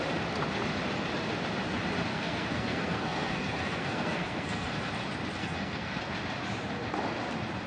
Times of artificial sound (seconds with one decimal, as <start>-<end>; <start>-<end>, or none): 2.1-4.9; 5.4-6.0